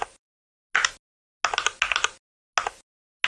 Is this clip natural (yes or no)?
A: yes